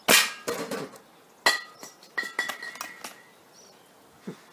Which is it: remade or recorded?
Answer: recorded